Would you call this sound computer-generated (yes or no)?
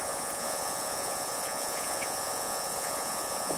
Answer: yes